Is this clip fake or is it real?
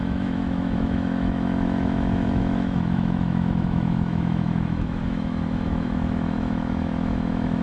fake